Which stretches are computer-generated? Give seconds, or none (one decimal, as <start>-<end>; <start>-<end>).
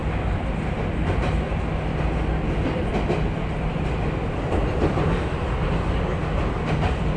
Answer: none